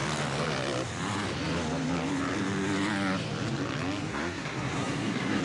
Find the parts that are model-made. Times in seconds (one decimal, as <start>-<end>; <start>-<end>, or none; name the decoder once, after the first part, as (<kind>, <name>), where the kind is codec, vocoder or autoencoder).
4.1-5.4 (codec, SNAC)